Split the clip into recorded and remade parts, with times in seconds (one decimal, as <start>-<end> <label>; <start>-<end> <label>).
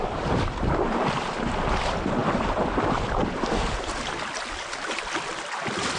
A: 0.0-6.0 recorded